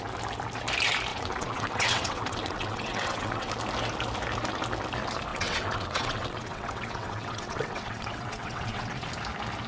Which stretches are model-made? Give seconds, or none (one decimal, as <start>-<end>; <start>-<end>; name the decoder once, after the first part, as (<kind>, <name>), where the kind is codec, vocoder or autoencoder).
1.1-3.5 (vocoder, WaveNeXt); 5.3-9.1